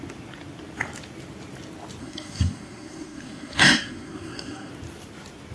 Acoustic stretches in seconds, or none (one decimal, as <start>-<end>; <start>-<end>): 0.0-2.0; 4.7-5.5